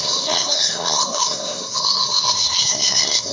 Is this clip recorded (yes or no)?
no